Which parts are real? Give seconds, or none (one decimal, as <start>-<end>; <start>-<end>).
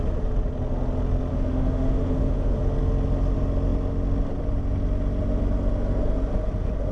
0.0-1.3; 2.6-6.9